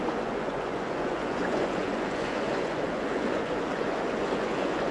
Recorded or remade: remade